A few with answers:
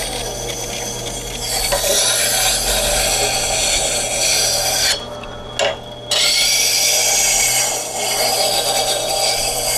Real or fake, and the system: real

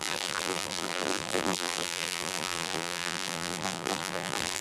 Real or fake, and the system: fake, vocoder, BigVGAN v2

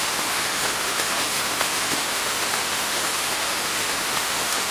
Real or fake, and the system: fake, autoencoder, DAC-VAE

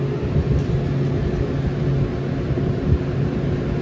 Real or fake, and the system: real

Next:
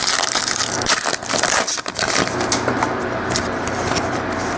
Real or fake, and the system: real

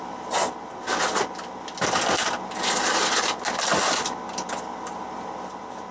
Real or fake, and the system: real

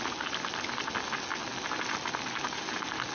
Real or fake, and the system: real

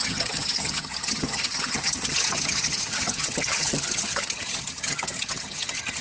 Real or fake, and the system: fake, vocoder, HiFi-GAN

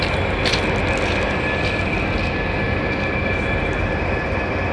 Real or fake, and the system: real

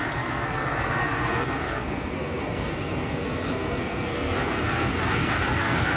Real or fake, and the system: fake, codec, SNAC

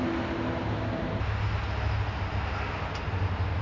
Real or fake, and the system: real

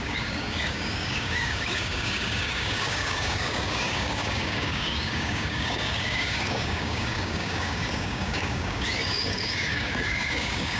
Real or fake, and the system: fake, codec, DAC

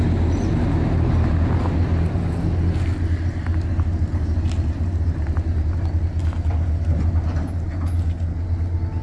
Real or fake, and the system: real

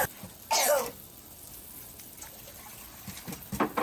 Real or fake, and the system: real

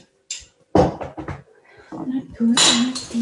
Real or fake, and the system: real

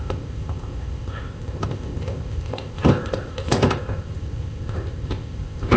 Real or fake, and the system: fake, codec, ZipCodec